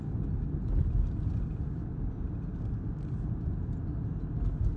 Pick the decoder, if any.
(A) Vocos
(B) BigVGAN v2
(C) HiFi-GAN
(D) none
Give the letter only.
D